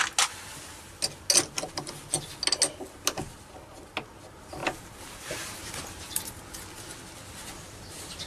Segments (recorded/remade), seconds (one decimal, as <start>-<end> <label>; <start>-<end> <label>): 0.0-4.6 recorded; 4.6-6.3 remade; 6.3-8.3 recorded